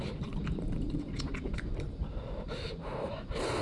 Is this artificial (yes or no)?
yes